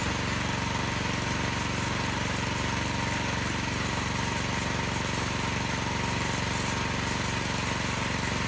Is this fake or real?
real